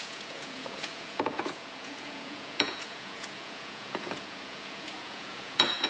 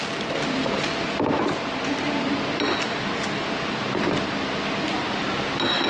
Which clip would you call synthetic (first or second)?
first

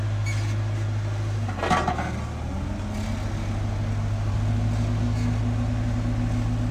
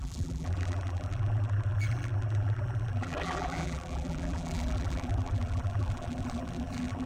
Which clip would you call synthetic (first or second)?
second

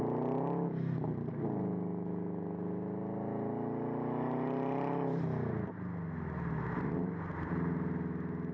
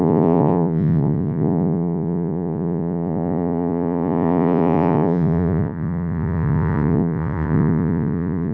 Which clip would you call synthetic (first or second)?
second